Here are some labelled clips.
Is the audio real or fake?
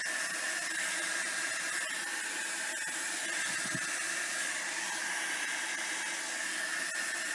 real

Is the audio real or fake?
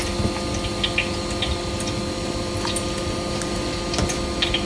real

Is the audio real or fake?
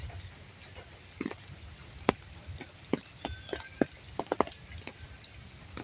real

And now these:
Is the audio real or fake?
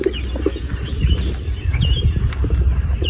real